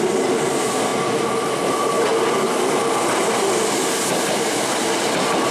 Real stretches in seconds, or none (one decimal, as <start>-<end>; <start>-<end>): 0.0-5.5